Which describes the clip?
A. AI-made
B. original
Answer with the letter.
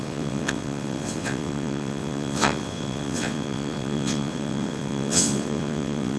A